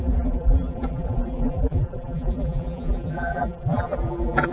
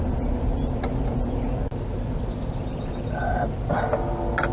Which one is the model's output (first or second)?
first